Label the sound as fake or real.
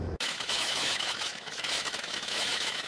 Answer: fake